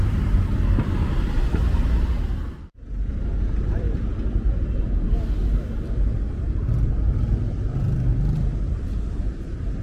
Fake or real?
real